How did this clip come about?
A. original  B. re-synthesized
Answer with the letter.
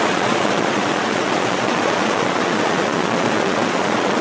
B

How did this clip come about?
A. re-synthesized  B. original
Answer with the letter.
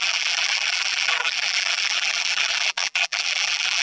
A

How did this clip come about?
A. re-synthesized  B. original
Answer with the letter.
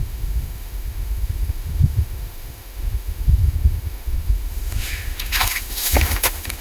A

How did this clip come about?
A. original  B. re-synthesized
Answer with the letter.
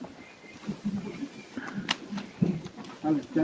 A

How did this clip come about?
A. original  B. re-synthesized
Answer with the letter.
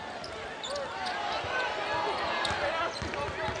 A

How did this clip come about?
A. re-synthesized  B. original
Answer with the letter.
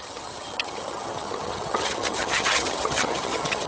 A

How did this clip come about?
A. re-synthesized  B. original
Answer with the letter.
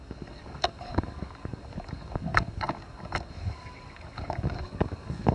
A